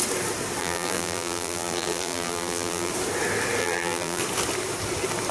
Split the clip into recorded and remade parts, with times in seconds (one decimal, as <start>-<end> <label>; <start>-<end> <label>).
0.0-0.6 recorded; 0.6-2.9 remade; 2.9-3.6 recorded; 3.6-4.2 remade; 4.2-5.3 recorded

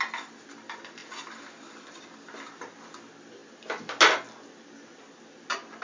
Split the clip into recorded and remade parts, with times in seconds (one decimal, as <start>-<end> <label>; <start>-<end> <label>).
0.0-5.8 recorded